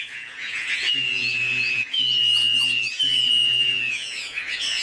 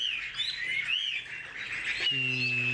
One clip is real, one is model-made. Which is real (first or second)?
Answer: second